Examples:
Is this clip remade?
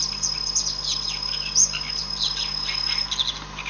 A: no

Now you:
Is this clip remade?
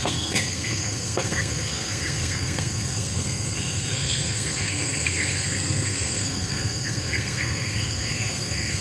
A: yes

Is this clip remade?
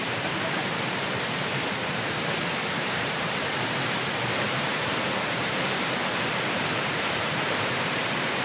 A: yes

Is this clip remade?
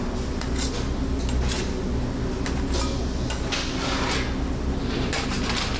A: no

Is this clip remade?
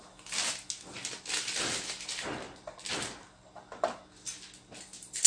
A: no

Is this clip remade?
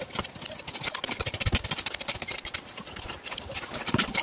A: no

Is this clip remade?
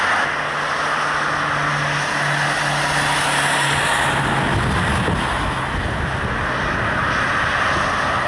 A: no